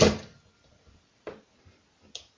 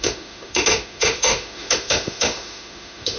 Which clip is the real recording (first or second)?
first